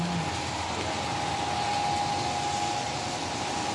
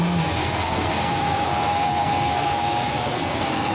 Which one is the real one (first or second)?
first